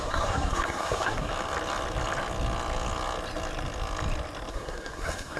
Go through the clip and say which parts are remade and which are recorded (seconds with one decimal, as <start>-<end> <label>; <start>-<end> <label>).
0.0-1.3 remade; 1.3-4.5 recorded; 4.5-5.4 remade